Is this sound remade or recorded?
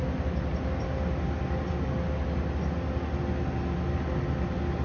recorded